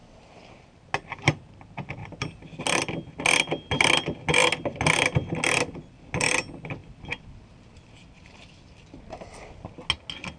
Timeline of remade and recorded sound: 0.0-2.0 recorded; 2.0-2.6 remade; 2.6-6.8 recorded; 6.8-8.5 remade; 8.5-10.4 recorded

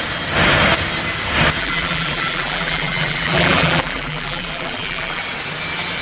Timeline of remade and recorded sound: 0.0-1.6 recorded; 1.6-5.2 remade; 5.2-6.0 recorded

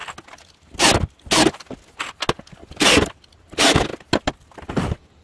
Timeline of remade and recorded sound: 0.0-5.2 recorded